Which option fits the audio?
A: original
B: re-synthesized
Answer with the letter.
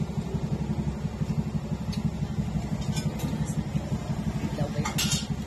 A